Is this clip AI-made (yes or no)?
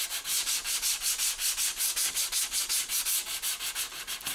no